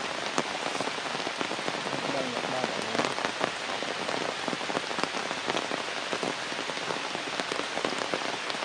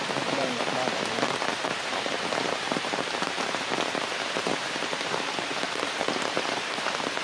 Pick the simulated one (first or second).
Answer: second